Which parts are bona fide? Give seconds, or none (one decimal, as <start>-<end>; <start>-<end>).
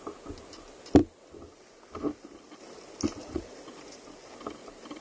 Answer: 0.0-3.2; 4.0-5.0